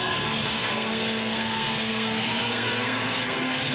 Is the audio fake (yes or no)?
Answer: yes